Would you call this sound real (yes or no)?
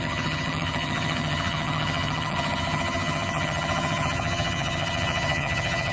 no